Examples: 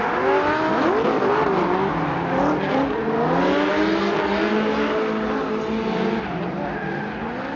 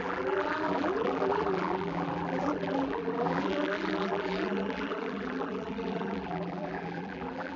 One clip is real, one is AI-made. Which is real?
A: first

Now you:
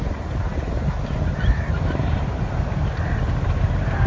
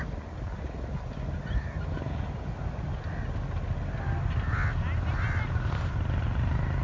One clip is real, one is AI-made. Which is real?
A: second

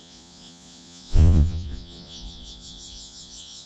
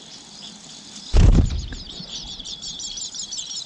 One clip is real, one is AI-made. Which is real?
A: second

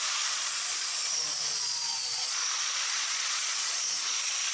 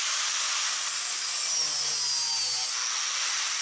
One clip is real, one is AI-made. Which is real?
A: second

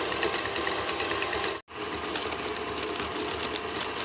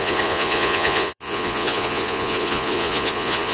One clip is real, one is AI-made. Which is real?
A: first